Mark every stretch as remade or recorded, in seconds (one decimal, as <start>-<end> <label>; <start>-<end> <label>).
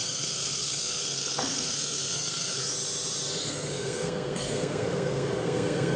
0.0-2.6 remade; 2.6-3.4 recorded; 3.4-6.0 remade